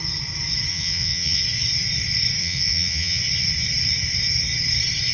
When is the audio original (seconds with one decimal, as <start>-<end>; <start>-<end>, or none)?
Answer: 0.0-0.7; 1.4-2.4; 3.2-5.1